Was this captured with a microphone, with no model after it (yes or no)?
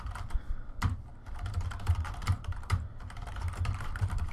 no